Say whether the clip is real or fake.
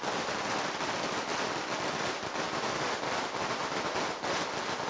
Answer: real